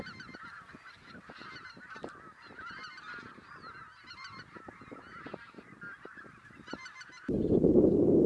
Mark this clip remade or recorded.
recorded